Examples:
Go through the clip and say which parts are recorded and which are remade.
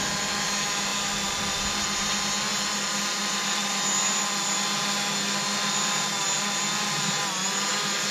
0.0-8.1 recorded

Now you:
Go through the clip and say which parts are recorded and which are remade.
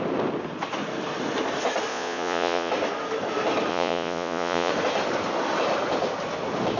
0.0-1.9 recorded; 1.9-2.7 remade; 2.7-3.7 recorded; 3.7-4.7 remade; 4.7-6.8 recorded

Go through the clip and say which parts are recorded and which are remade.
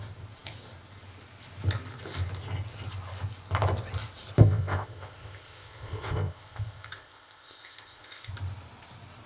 0.0-4.4 recorded; 4.4-8.3 remade; 8.3-9.3 recorded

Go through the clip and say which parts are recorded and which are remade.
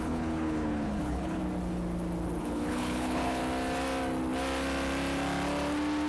0.0-1.4 remade; 1.4-2.4 recorded; 2.4-3.4 remade; 3.4-6.1 recorded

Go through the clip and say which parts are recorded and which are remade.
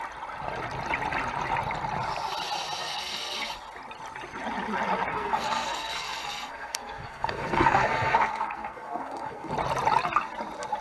0.0-2.8 recorded; 2.8-3.5 remade; 3.5-5.1 recorded; 5.1-9.5 remade; 9.5-10.8 recorded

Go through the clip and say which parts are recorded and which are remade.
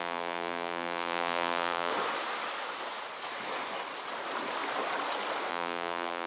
0.0-1.9 remade; 1.9-5.5 recorded; 5.5-6.3 remade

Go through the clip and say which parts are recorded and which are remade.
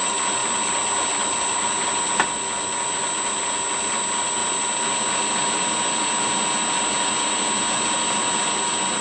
0.0-9.0 recorded